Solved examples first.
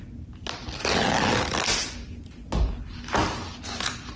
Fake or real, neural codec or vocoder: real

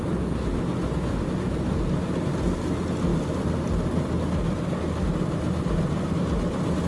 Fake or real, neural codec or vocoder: real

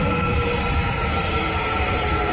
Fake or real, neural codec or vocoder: real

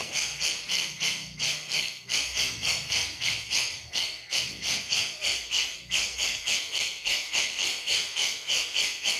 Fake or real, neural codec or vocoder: fake, codec, SNAC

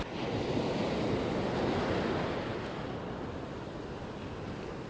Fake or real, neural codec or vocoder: real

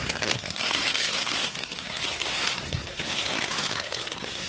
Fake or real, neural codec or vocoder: fake, codec, SNAC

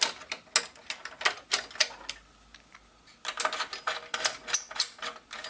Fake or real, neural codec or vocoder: real